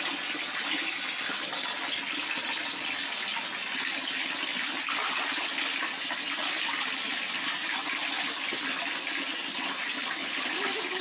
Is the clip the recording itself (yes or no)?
yes